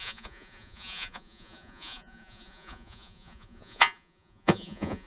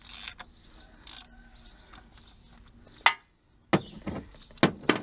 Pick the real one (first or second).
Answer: second